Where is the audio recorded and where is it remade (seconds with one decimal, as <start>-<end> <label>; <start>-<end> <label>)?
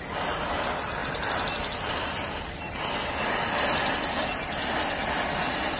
0.0-5.8 recorded